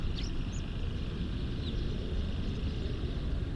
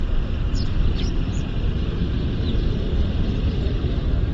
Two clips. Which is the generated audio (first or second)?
second